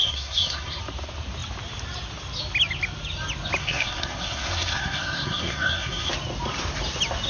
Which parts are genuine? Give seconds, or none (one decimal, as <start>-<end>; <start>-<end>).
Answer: 0.8-3.6; 6.1-7.3